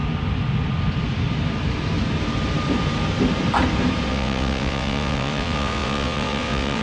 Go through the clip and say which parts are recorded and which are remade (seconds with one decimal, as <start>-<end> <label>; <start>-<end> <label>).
0.0-4.1 recorded; 4.1-6.8 remade